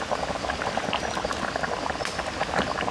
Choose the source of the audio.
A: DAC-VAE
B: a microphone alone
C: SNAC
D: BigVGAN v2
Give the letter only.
B